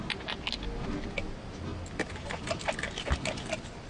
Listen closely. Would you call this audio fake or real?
real